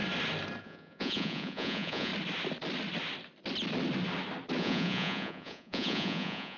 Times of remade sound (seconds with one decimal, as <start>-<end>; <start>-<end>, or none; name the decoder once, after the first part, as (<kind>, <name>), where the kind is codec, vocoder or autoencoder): 0.6-2.1 (vocoder, Vocos); 4.6-6.6